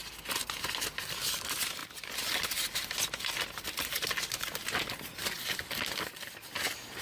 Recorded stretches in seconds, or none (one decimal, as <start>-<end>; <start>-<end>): 0.0-7.0

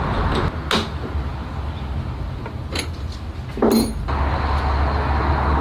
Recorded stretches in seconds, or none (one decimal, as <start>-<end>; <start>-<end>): 0.0-5.6